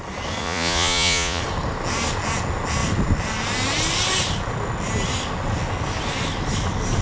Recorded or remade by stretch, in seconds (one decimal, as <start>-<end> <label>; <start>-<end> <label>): 0.0-0.4 recorded; 0.4-1.4 remade; 1.4-7.0 recorded